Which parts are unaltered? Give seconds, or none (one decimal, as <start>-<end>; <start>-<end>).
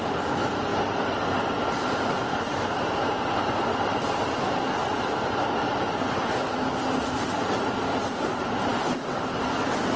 0.0-10.0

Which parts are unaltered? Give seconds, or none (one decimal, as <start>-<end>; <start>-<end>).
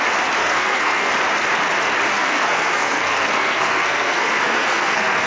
0.0-0.4; 1.1-2.1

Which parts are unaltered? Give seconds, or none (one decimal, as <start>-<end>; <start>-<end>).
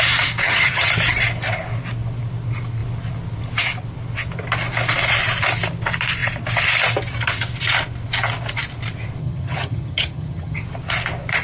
0.0-0.4; 0.9-9.2; 10.6-11.4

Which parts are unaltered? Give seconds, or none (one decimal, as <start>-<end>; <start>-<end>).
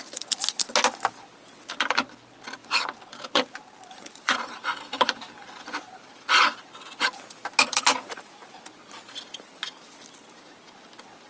0.0-2.6; 6.1-7.7; 8.6-11.3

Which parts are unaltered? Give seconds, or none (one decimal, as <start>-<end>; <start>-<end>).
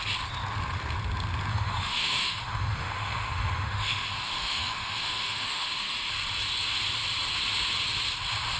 0.0-1.5; 6.1-8.6